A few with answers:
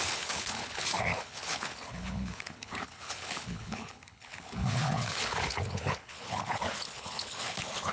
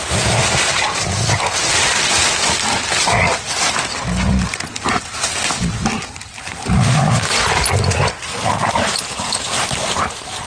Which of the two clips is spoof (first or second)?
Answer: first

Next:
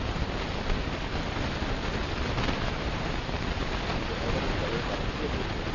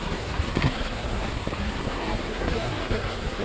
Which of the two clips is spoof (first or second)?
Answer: second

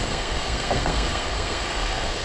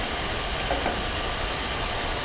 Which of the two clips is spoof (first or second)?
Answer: first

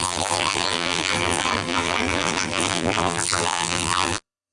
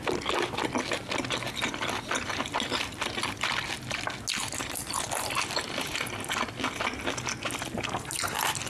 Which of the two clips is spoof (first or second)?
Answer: first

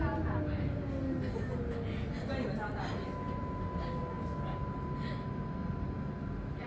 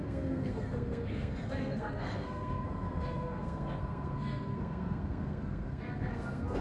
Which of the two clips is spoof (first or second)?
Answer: second